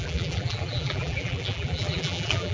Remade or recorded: remade